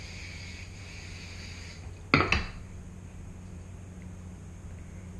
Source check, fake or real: real